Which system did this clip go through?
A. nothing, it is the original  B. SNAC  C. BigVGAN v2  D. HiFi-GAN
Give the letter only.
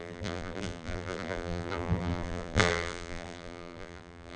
C